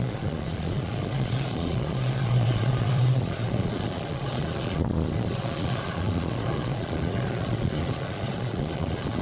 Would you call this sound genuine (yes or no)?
no